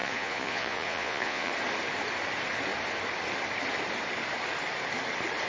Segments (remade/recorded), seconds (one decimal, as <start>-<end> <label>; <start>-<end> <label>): 0.0-1.5 remade; 1.5-5.5 recorded